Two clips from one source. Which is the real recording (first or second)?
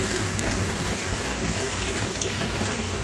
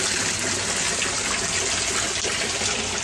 second